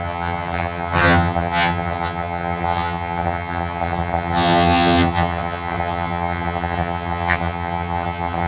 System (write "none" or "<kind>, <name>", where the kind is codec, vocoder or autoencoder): vocoder, HiFi-GAN